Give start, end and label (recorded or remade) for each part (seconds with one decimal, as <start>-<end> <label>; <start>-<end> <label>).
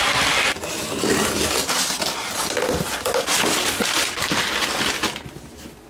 0.0-5.9 recorded